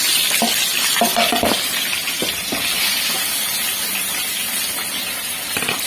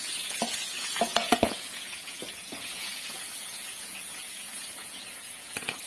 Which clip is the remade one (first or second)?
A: second